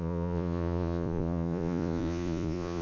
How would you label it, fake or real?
fake